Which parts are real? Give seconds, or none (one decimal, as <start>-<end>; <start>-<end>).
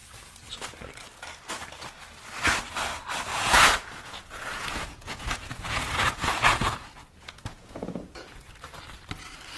0.0-3.3; 8.5-9.6